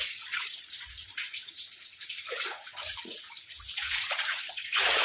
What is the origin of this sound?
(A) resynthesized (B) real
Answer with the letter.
A